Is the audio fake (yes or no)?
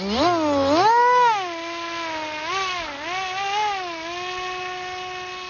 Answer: no